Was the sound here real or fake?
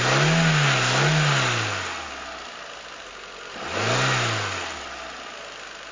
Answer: real